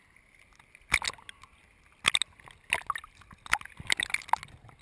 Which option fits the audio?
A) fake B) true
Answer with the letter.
B